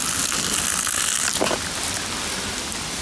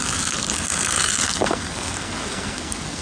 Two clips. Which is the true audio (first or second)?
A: first